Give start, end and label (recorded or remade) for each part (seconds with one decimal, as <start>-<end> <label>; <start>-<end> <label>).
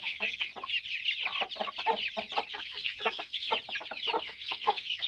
0.0-0.5 remade; 0.5-2.5 recorded; 2.5-3.5 remade; 3.5-4.2 recorded; 4.2-5.1 remade